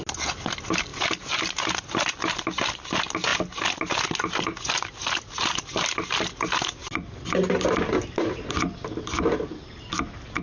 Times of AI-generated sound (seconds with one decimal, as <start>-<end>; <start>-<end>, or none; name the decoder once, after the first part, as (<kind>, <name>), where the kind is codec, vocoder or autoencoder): none